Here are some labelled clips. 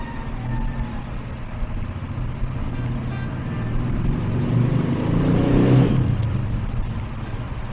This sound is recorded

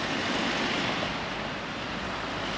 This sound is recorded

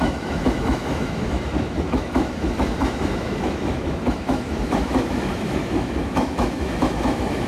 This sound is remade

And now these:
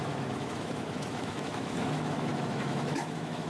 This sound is remade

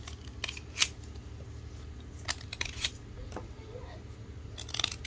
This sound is recorded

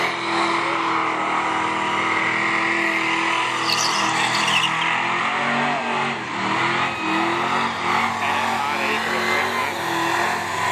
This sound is recorded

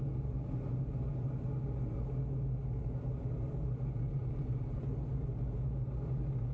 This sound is recorded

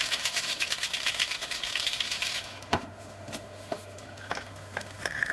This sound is remade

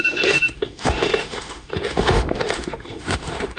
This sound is remade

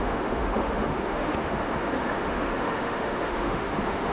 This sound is remade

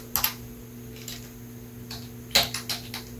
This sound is recorded